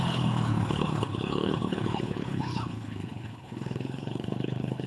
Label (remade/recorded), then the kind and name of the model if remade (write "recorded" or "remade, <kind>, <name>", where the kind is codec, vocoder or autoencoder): remade, codec, HILCodec